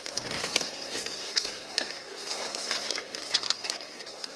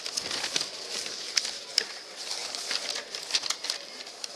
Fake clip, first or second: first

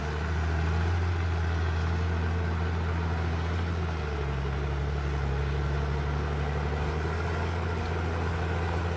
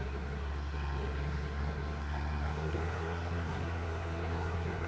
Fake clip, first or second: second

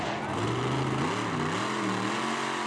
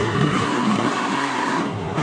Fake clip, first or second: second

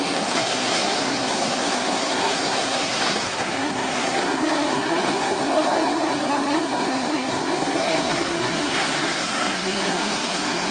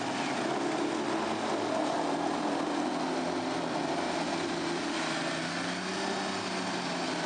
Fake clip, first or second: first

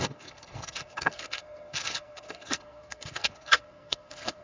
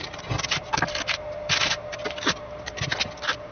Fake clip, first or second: first